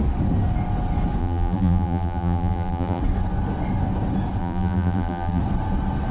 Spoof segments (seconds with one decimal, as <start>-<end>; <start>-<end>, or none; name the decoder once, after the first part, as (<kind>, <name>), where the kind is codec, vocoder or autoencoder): 1.2-3.0 (vocoder, BigVGAN v2); 4.4-5.4